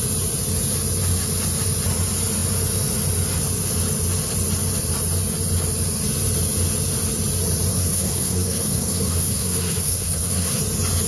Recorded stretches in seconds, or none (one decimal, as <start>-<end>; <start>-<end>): 0.0-7.7; 10.6-11.1